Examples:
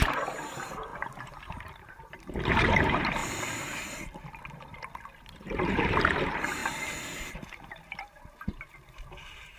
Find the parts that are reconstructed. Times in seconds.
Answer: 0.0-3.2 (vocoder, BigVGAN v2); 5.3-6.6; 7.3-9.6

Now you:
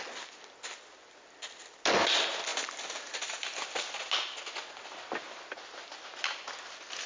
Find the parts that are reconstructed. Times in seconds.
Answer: none

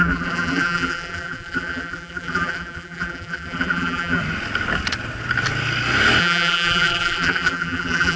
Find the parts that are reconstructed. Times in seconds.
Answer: 0.0-4.2 (vocoder, BigVGAN v2); 6.2-8.2

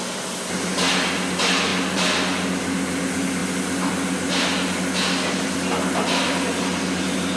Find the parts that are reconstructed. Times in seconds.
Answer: none

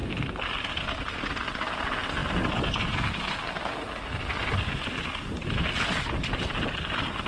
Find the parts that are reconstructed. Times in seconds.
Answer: none

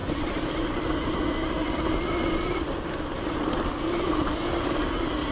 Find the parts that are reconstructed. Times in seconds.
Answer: 0.0-0.7 (vocoder, BigVGAN v2); 1.6-4.8

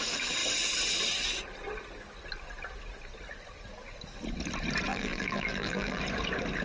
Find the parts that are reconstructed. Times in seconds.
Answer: 4.9-6.0 (vocoder, BigVGAN v2)

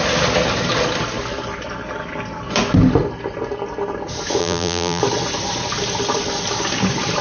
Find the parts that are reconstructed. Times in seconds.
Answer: 4.4-5.0 (vocoder, BigVGAN v2)